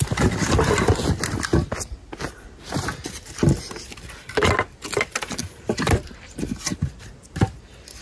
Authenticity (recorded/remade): recorded